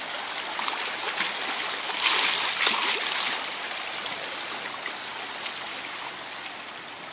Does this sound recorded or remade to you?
recorded